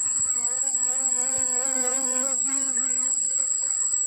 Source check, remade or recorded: recorded